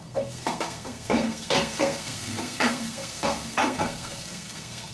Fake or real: fake